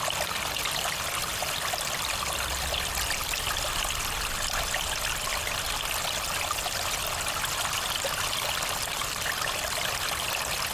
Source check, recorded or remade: recorded